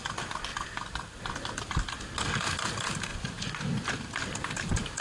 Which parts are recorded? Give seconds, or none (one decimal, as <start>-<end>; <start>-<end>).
0.0-3.1; 3.9-5.0